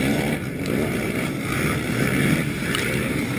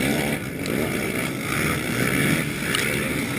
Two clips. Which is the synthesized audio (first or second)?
first